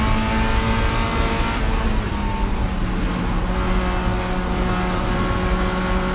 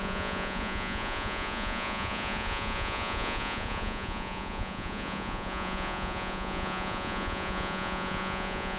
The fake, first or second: second